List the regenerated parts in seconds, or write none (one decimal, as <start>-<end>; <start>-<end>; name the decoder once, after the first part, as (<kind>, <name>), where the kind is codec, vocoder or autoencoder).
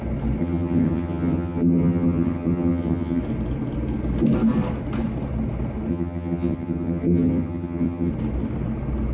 0.4-3.2 (vocoder, HiFi-GAN); 5.9-8.1